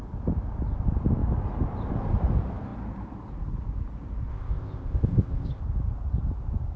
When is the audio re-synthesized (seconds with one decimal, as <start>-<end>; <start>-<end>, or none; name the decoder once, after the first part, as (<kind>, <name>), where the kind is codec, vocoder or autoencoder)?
4.3-5.6 (codec, ZipCodec)